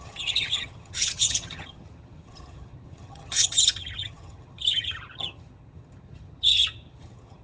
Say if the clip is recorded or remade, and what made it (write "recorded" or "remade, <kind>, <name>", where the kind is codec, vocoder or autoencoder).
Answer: remade, vocoder, HiFi-GAN